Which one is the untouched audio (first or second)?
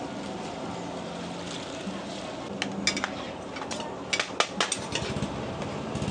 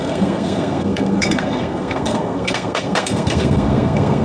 first